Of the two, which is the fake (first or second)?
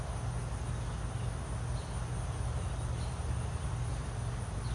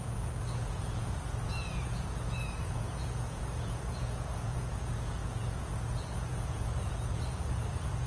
second